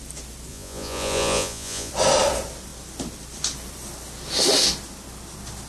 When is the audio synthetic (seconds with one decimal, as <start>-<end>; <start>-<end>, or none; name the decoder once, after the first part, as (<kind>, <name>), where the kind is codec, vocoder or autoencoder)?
0.5-1.9 (vocoder, Vocos)